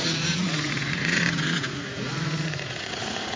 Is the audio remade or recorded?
remade